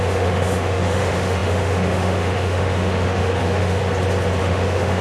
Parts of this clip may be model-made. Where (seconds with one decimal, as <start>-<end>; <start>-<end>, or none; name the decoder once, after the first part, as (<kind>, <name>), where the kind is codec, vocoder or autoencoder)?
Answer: 0.0-3.8 (autoencoder, DAC-VAE); 4.4-5.0